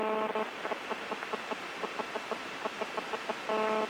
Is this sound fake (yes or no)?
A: no